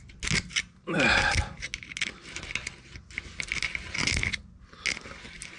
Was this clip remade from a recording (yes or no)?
no